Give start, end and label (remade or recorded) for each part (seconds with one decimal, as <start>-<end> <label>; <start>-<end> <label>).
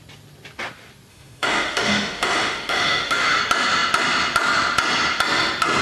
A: 0.0-1.1 recorded; 1.1-3.4 remade; 3.4-5.8 recorded